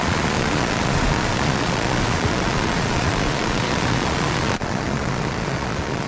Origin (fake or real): fake